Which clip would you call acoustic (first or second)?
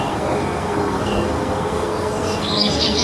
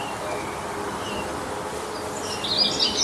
second